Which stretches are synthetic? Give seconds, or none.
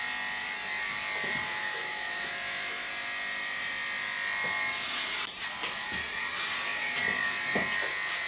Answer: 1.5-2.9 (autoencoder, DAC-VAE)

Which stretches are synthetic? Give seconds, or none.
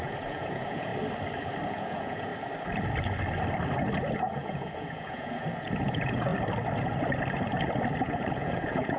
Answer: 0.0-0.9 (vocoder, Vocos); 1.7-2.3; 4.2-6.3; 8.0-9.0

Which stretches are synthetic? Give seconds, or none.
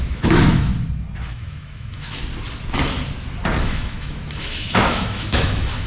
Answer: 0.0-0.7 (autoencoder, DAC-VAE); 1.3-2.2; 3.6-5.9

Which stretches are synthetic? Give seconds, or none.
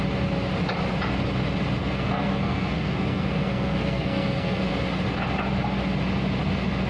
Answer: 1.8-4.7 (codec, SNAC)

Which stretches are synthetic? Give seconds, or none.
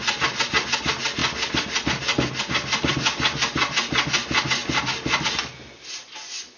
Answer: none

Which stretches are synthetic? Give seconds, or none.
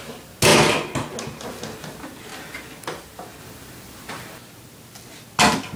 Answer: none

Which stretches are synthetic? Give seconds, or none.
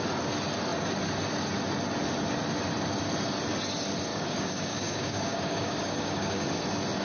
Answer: 4.1-6.4 (codec, DAC)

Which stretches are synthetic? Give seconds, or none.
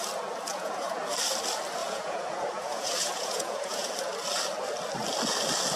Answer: 0.5-1.0 (vocoder, Vocos); 1.8-3.9